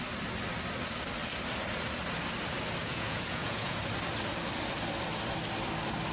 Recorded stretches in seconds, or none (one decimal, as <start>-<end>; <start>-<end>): 0.0-2.8; 3.8-6.1